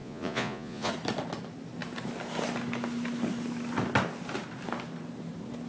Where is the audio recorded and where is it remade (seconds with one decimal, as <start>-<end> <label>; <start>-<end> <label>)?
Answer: 0.0-0.9 remade; 0.9-5.7 recorded